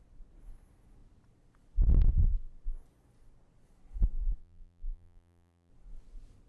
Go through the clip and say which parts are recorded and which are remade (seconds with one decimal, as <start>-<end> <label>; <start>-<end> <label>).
0.0-4.4 recorded; 4.4-5.7 remade; 5.7-6.5 recorded